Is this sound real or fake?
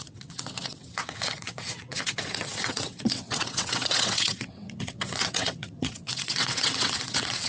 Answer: fake